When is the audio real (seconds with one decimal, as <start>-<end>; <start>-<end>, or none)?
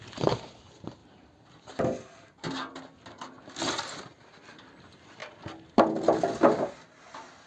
0.0-7.5